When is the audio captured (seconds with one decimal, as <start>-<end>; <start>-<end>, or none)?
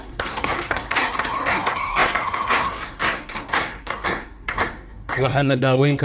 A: none